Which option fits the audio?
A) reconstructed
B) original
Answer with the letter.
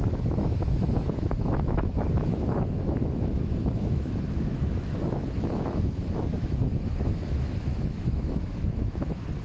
A